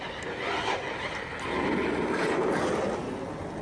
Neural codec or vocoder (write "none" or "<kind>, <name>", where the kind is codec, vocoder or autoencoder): none